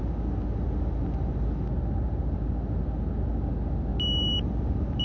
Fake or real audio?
real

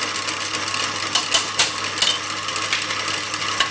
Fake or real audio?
real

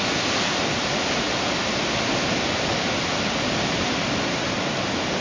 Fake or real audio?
real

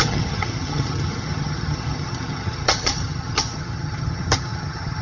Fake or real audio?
fake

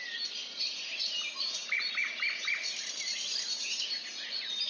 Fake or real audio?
real